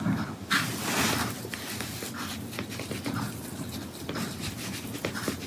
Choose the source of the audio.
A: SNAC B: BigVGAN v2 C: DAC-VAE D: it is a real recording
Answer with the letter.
D